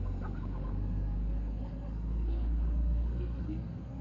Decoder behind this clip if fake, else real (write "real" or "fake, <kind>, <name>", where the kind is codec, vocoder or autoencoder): fake, codec, SNAC